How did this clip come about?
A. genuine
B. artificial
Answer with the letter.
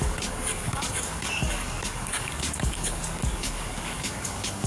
B